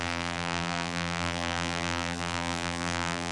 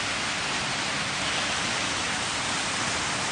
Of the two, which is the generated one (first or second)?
first